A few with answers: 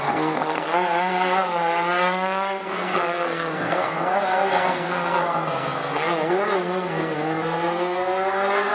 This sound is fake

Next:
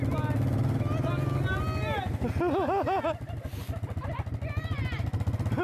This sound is real